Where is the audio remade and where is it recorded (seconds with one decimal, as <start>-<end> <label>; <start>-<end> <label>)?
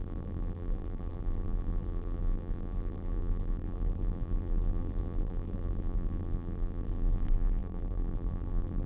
0.0-8.9 remade